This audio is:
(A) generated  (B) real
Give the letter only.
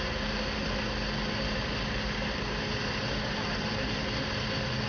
B